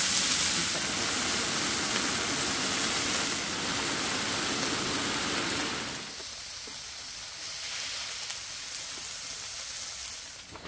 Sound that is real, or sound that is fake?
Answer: real